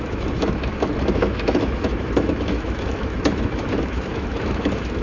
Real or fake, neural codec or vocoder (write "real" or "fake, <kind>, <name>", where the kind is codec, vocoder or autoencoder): fake, autoencoder, DAC-VAE